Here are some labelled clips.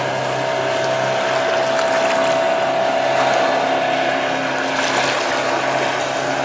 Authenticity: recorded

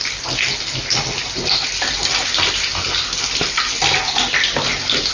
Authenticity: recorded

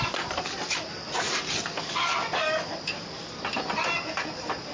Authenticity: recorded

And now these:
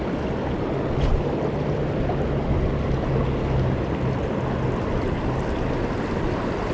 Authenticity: recorded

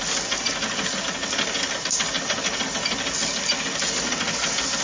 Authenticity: recorded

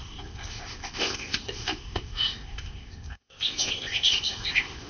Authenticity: remade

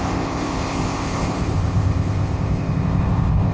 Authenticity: remade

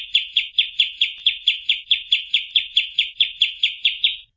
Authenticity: recorded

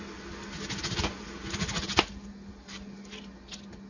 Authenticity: recorded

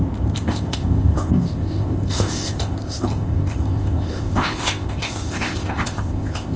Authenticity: remade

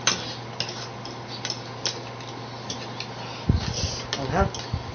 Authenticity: recorded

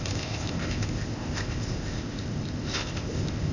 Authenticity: remade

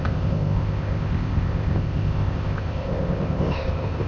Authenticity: remade